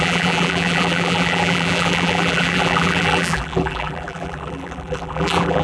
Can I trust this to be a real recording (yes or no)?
no